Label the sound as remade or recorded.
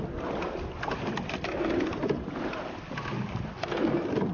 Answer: recorded